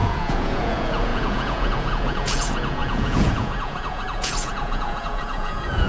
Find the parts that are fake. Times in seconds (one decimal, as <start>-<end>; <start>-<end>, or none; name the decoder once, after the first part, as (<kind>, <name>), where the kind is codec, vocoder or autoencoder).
0.0-5.9 (vocoder, Vocos)